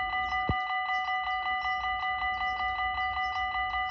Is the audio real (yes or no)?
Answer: yes